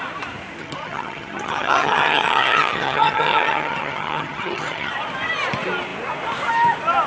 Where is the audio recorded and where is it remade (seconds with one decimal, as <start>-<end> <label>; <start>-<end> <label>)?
0.0-0.6 recorded; 0.6-4.9 remade; 4.9-7.1 recorded